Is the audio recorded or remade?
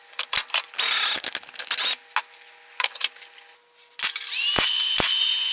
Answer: recorded